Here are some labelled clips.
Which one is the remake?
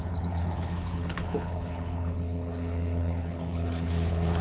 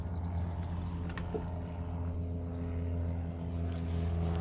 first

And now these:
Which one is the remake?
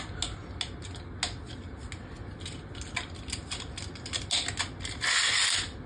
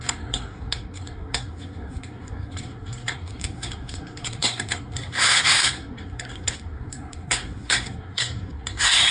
second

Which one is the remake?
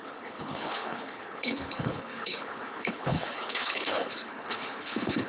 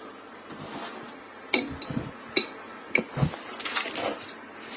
first